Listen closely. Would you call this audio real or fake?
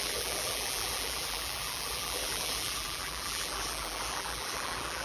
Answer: fake